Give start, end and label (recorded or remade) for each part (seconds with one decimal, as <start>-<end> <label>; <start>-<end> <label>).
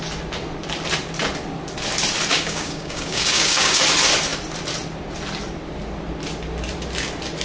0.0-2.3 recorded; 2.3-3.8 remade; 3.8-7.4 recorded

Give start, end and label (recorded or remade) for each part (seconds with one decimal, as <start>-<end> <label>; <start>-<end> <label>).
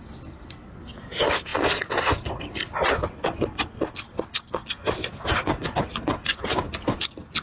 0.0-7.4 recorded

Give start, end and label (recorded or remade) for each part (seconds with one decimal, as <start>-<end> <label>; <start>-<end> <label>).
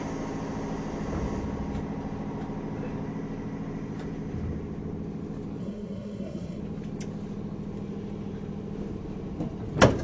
0.0-5.6 recorded; 5.6-6.6 remade; 6.6-10.0 recorded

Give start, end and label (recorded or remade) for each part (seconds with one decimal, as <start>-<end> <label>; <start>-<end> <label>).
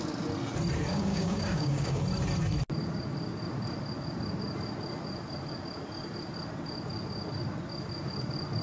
0.0-0.9 recorded; 0.9-2.0 remade; 2.0-8.6 recorded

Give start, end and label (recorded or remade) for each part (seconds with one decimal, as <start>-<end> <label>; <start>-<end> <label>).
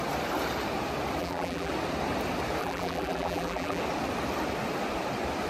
0.0-1.2 recorded; 1.2-1.7 remade; 1.7-2.6 recorded; 2.6-3.8 remade; 3.8-5.5 recorded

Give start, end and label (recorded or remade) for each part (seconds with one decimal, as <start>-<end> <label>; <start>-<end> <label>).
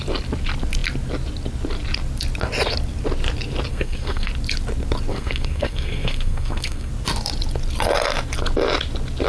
0.0-3.7 recorded; 3.7-4.3 remade; 4.3-5.1 recorded; 5.1-6.9 remade; 6.9-9.3 recorded